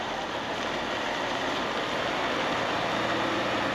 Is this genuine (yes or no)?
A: yes